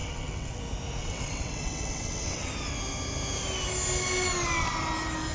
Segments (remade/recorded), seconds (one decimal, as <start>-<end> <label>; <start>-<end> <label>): 0.0-0.6 remade; 0.6-1.0 recorded; 1.0-2.5 remade; 2.5-5.3 recorded